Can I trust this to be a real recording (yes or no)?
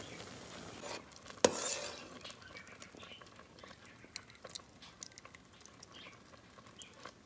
yes